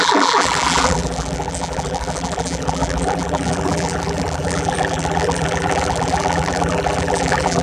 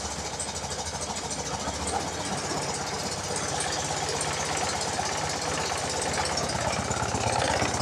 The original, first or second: second